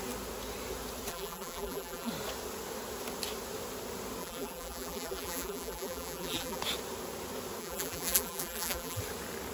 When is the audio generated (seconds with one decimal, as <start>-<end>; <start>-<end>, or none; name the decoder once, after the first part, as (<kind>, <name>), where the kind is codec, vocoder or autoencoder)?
1.1-2.1 (vocoder, BigVGAN v2); 4.2-6.6; 7.6-9.0